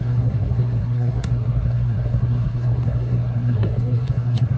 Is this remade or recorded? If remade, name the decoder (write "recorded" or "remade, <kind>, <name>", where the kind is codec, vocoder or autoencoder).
remade, codec, SNAC